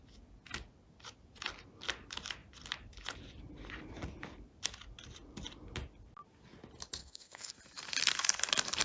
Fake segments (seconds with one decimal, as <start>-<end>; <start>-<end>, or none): 7.0-7.5